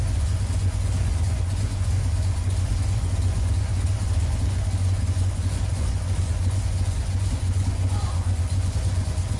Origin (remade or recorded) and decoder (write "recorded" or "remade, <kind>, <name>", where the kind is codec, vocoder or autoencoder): remade, vocoder, Vocos